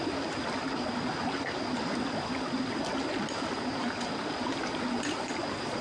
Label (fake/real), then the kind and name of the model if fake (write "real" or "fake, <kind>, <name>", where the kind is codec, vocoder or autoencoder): real